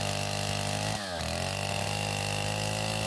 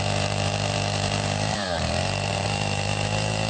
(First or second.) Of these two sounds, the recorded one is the first